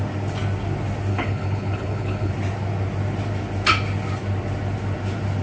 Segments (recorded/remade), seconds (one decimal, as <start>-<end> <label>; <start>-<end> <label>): 0.0-1.1 recorded; 1.1-2.3 remade; 2.3-5.4 recorded